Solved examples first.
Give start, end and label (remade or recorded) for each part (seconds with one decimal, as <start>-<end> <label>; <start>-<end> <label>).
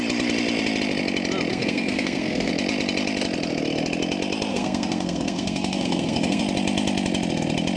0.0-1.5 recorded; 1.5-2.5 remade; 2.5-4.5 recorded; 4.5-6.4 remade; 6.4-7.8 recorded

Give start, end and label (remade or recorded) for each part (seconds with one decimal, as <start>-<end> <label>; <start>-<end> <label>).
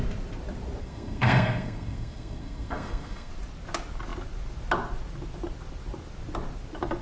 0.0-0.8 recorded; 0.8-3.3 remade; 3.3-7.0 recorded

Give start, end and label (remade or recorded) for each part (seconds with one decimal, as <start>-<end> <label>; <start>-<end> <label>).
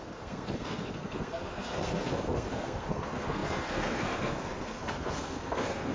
0.0-5.9 remade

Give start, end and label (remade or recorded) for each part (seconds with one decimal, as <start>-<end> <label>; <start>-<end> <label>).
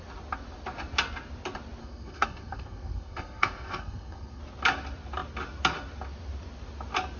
0.0-1.8 recorded; 1.8-4.4 remade; 4.4-7.2 recorded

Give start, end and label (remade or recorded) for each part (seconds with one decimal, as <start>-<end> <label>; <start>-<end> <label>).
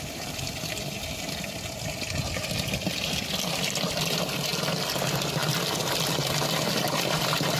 0.0-7.6 recorded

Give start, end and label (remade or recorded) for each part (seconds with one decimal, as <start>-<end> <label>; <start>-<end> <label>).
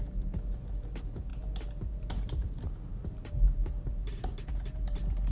0.0-5.3 recorded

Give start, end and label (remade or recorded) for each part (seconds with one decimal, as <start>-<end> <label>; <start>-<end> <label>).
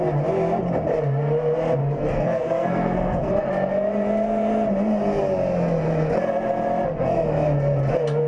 0.0-1.8 recorded; 1.8-3.5 remade; 3.5-8.3 recorded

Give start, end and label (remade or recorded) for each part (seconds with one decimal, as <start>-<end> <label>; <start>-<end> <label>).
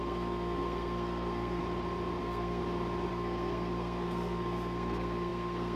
0.0-1.6 remade; 1.6-2.2 recorded; 2.2-2.6 remade; 2.6-3.1 recorded; 3.1-5.8 remade